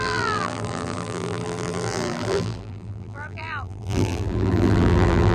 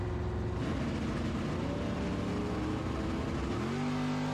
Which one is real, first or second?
second